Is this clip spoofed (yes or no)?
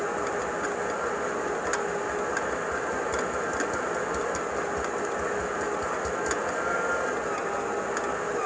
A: no